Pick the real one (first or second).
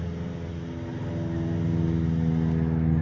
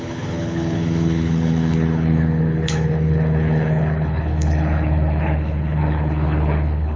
first